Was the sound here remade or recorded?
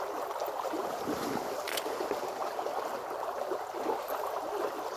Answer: recorded